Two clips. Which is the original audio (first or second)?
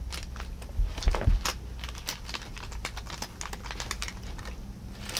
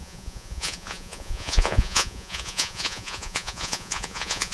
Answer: first